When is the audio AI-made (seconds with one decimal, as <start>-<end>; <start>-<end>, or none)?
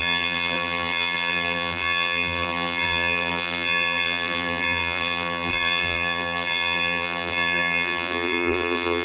0.0-9.0